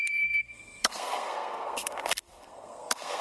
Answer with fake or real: fake